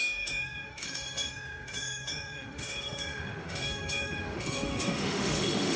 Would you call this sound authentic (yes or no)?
no